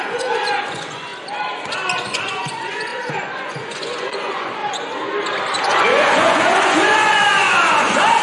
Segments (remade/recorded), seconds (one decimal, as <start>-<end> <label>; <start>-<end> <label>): 0.0-1.1 remade; 1.1-2.0 recorded; 2.0-4.6 remade; 4.6-5.6 recorded; 5.6-8.2 remade